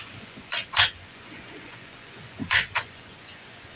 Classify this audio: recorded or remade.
remade